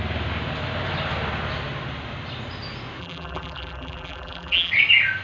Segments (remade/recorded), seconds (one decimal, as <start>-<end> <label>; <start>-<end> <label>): 0.0-3.0 recorded; 3.0-4.7 remade; 4.7-5.2 recorded